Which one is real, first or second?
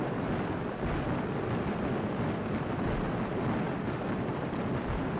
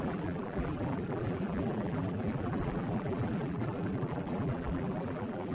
first